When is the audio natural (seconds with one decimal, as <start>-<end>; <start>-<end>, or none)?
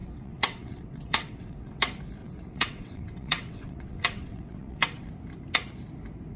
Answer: 1.8-2.2; 5.1-6.4